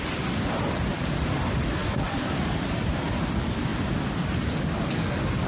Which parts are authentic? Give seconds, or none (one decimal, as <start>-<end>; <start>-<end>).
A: 3.7-5.1